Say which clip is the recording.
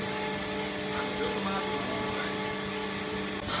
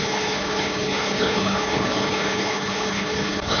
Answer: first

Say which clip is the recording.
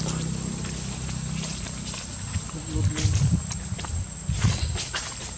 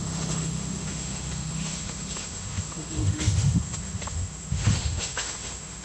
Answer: first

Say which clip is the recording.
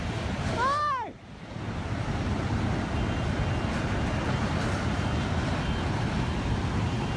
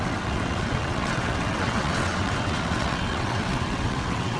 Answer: first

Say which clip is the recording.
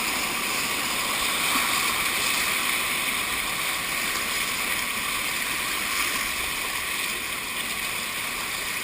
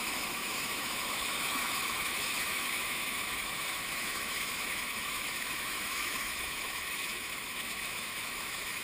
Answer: first